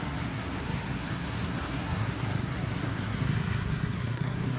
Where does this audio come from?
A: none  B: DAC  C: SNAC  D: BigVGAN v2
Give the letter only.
C